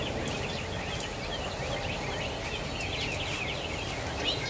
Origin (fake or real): real